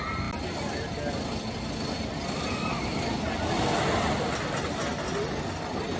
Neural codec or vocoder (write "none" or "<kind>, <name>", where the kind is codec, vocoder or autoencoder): none